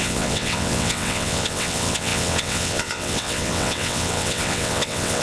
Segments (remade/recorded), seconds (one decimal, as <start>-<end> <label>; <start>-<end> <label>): 0.0-5.2 remade